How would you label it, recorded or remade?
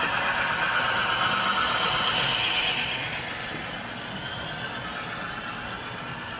recorded